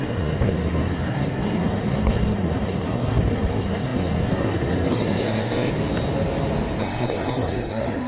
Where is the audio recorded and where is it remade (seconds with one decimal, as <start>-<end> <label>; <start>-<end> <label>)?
0.0-5.7 remade; 5.7-6.8 recorded; 6.8-8.1 remade